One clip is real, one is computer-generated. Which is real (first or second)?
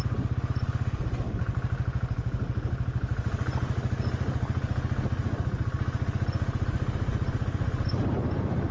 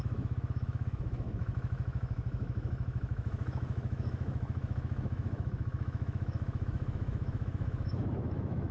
first